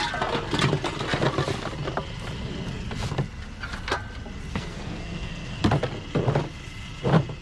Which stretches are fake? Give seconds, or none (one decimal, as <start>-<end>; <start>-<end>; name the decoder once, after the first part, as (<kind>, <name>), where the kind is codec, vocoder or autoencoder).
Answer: 4.5-5.6 (codec, SNAC)